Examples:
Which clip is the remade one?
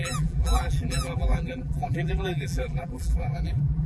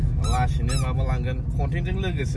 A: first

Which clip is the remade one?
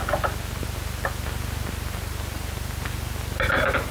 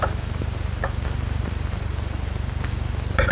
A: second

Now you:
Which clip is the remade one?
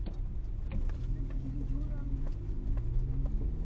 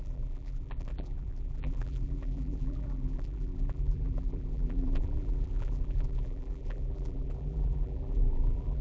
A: second